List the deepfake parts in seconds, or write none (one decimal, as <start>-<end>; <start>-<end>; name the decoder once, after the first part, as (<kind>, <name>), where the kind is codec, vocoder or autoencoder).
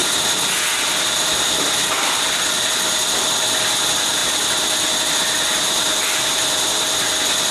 0.0-2.6 (vocoder, BigVGAN v2)